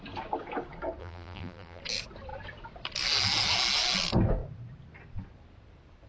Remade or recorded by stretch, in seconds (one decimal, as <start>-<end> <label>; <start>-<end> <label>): 0.0-1.0 recorded; 1.0-1.8 remade; 1.8-6.1 recorded